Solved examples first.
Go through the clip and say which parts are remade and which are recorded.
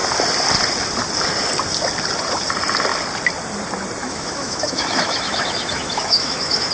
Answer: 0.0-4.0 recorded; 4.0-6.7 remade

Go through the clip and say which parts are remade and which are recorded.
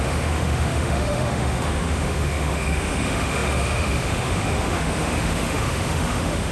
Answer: 0.0-6.5 remade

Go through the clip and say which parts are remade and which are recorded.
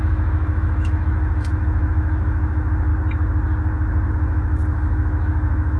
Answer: 0.0-2.9 remade; 2.9-4.1 recorded; 4.1-5.8 remade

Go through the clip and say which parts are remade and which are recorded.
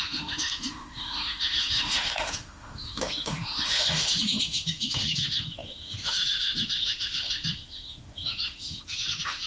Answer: 0.0-9.5 remade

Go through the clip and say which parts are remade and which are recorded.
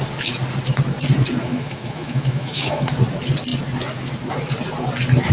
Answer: 0.0-1.4 recorded; 1.4-2.9 remade; 2.9-5.3 recorded